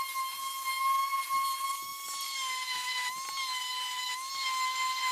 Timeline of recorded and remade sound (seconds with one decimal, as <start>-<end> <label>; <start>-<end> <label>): 0.0-5.1 recorded